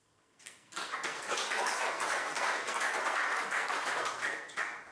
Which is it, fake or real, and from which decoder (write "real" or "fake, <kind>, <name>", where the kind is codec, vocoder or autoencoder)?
fake, codec, SNAC